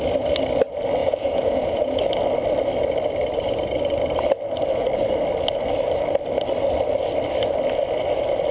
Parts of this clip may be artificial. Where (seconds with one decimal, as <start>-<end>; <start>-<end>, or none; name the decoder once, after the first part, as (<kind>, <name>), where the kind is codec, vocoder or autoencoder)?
1.0-2.0 (vocoder, Vocos)